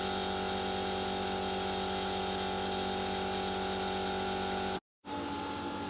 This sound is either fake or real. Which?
real